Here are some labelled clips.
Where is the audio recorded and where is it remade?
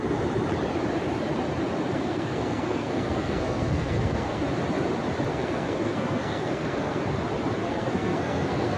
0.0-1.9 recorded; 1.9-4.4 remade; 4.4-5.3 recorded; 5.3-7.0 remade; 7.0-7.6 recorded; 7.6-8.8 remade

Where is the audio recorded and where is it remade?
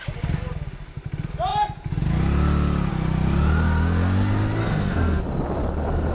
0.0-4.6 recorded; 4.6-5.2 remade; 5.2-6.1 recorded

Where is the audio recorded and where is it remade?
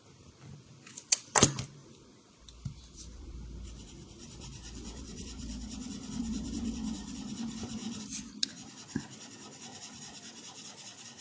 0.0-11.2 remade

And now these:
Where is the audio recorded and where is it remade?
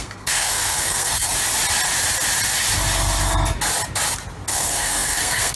0.0-1.3 remade; 1.3-4.5 recorded; 4.5-5.6 remade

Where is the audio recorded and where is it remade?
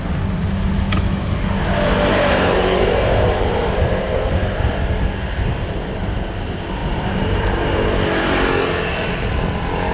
0.0-2.1 recorded; 2.1-4.4 remade; 4.4-6.8 recorded; 6.8-7.6 remade; 7.6-9.9 recorded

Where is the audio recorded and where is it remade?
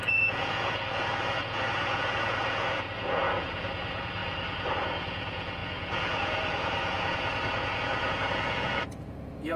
0.0-4.2 remade; 4.2-4.7 recorded; 4.7-9.6 remade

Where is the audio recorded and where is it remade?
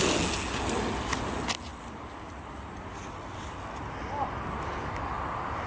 0.0-5.7 recorded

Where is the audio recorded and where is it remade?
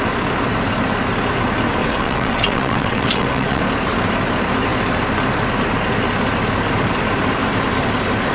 0.0-1.8 recorded; 1.8-3.6 remade; 3.6-8.3 recorded